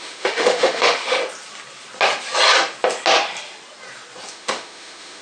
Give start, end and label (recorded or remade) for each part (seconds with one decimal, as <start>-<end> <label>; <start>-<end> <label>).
0.0-1.2 remade; 1.2-4.3 recorded; 4.3-5.2 remade